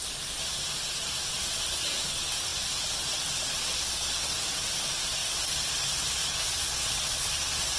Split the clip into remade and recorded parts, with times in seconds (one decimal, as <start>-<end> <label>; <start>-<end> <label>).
0.0-6.2 recorded; 6.2-7.3 remade; 7.3-7.8 recorded